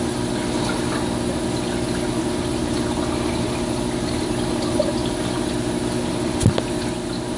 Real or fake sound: real